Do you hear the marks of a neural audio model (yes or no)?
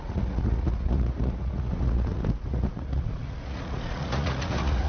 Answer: yes